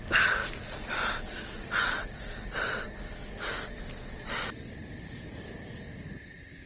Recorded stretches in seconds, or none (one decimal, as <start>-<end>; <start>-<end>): 0.0-6.7